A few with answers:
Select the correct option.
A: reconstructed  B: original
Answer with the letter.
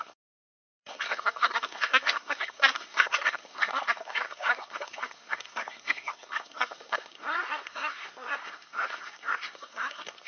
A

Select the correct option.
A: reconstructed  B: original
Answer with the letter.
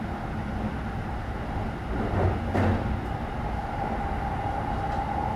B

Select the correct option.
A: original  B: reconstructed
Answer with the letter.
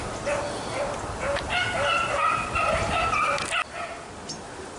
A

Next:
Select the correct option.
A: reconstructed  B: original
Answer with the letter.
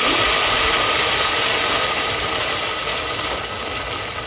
B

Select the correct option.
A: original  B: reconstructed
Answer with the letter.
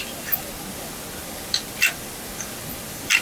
A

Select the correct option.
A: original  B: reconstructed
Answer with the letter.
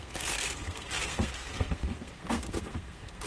B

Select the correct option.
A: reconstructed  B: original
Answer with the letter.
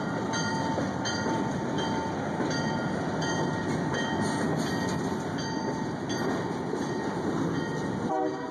B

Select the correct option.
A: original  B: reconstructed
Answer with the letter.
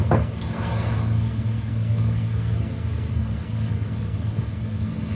B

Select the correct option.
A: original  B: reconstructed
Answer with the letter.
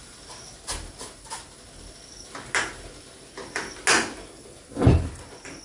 A